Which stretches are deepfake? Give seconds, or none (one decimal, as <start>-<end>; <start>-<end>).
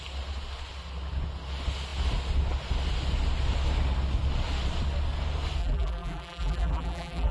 5.6-7.3